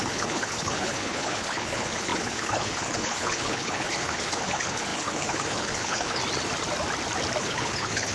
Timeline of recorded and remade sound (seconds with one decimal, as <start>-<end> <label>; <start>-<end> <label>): 0.0-6.2 remade; 6.2-7.4 recorded; 7.4-8.1 remade